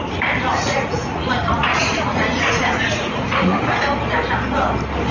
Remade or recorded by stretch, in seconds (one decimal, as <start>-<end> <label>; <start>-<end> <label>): 0.0-0.5 recorded; 0.5-3.6 remade; 3.6-5.1 recorded